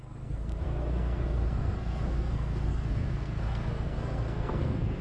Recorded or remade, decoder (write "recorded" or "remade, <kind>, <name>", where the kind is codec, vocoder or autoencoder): remade, codec, SNAC